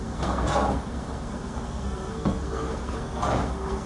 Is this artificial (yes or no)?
yes